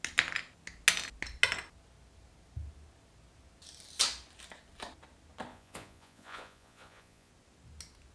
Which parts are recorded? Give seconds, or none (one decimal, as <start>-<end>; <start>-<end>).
0.0-5.5; 7.3-8.1